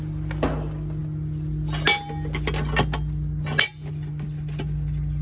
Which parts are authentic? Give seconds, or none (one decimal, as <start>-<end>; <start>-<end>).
0.0-5.2